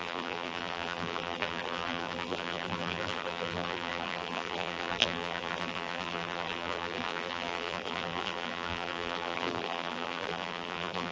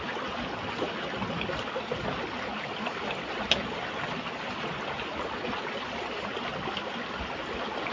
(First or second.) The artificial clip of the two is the first